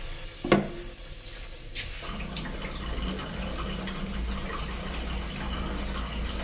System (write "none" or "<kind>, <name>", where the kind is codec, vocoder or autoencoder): none